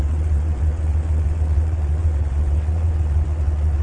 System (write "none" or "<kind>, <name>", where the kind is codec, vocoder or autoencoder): vocoder, WaveNeXt